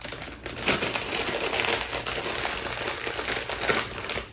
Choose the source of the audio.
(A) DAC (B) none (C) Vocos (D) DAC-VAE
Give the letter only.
B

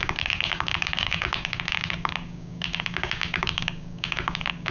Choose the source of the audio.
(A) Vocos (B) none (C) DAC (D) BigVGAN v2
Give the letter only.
C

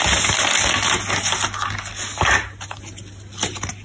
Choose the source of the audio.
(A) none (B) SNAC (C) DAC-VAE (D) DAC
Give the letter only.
A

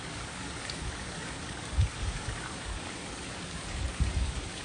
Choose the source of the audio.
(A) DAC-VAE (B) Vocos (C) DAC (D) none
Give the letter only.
C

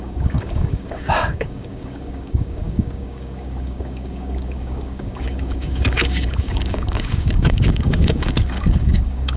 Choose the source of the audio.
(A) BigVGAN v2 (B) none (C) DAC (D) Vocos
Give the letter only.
C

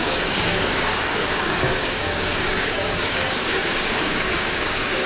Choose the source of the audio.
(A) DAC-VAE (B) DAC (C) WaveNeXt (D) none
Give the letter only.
B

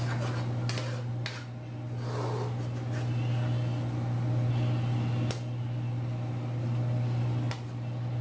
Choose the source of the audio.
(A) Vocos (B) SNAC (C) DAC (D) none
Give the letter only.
D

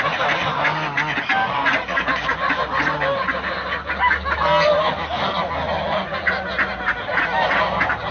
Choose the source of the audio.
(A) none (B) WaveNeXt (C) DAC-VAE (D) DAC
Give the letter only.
A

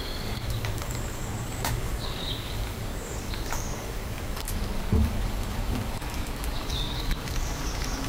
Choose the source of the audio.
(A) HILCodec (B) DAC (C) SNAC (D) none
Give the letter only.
B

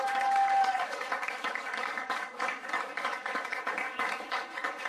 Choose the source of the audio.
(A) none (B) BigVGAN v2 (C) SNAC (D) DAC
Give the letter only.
D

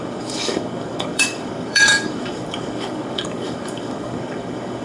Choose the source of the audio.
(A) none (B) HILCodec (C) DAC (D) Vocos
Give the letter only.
C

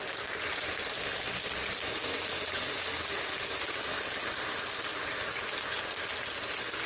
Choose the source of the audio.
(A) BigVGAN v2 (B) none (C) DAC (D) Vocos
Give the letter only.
B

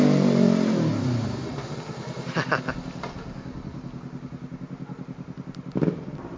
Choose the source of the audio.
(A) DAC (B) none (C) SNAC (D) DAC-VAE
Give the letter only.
B